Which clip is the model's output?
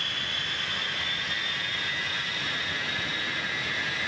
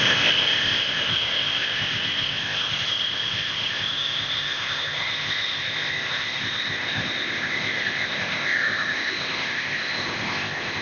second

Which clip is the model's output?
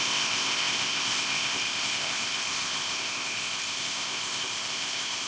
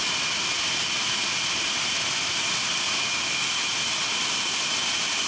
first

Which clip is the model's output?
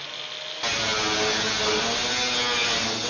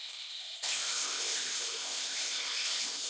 second